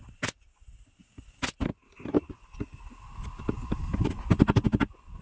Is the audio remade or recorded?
recorded